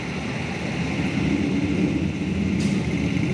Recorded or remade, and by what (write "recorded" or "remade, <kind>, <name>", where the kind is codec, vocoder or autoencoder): recorded